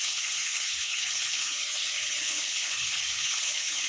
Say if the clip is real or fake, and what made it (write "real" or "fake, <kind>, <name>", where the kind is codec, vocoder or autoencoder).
fake, codec, HILCodec